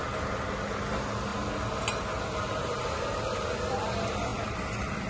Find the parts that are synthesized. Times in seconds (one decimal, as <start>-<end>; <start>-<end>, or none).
4.3-5.1